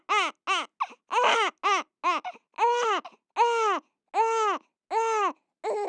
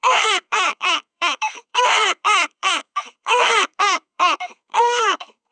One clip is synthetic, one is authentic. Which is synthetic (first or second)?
second